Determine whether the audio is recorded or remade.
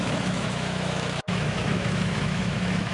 remade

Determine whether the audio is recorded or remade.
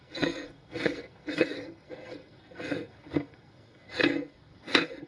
remade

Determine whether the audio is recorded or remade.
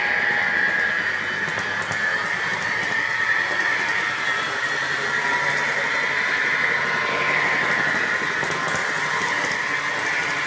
recorded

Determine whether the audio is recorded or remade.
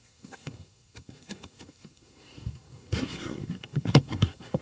remade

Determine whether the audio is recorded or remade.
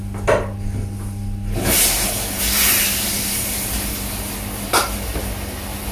recorded